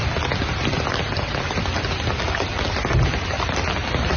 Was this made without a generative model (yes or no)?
yes